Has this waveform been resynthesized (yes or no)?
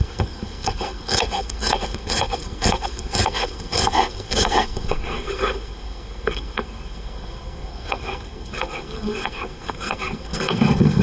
yes